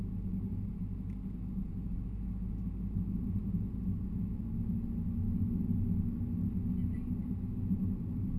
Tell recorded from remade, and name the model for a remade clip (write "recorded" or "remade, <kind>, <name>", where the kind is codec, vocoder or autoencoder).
recorded